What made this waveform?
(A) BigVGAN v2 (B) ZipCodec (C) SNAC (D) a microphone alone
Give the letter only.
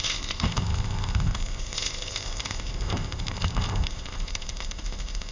B